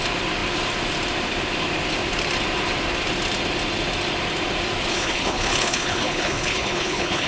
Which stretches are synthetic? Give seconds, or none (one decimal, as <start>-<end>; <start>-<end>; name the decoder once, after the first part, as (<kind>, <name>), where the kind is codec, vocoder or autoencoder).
4.9-7.3 (codec, HILCodec)